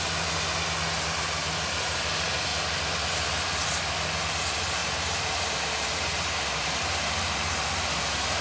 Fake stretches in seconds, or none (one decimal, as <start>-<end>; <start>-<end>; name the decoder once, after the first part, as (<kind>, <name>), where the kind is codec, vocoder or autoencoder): 1.4-2.1 (vocoder, BigVGAN v2); 4.8-6.8